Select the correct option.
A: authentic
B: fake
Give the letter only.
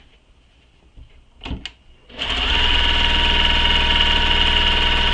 A